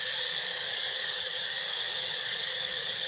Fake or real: fake